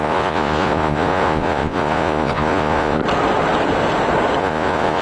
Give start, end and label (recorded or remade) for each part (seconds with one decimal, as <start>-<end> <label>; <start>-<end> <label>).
0.0-3.0 remade; 3.0-4.4 recorded; 4.4-5.0 remade